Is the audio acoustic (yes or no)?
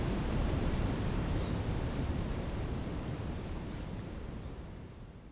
no